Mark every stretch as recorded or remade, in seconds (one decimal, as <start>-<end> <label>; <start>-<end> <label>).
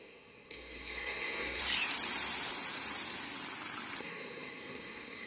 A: 0.0-1.6 remade; 1.6-4.0 recorded; 4.0-5.3 remade